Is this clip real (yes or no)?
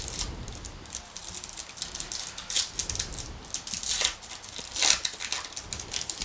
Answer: yes